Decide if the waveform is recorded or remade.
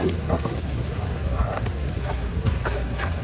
remade